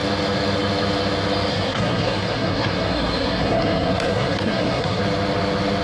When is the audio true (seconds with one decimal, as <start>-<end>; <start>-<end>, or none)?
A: 0.0-1.5; 5.0-5.8